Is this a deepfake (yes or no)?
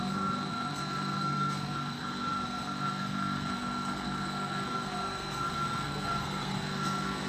yes